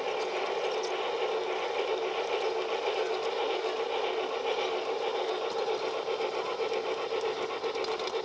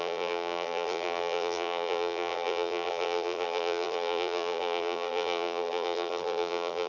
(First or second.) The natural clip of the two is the first